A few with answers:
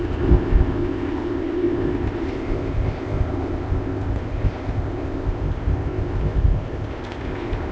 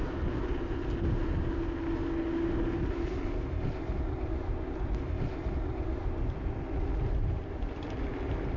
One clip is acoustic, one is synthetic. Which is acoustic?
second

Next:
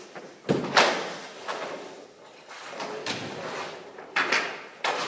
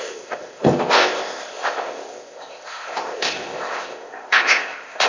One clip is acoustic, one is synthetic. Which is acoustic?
first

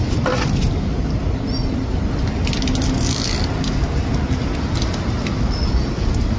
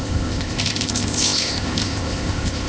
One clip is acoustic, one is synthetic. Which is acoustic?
first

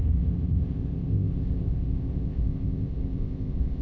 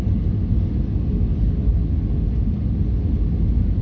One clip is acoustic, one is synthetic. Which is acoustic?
second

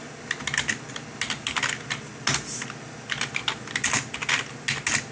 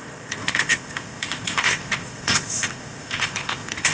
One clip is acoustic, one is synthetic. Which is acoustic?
first